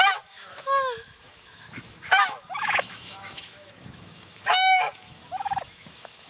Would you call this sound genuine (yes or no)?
no